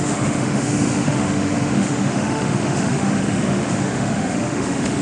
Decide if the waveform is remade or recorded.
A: remade